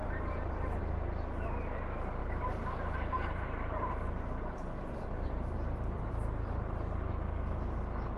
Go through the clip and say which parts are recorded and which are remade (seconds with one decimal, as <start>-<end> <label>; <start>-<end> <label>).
0.0-0.8 remade; 0.8-2.2 recorded; 2.2-7.1 remade; 7.1-8.2 recorded